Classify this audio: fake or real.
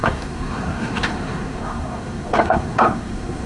fake